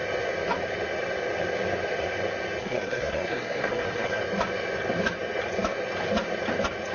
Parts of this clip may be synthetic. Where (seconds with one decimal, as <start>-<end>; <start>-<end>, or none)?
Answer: 2.6-4.2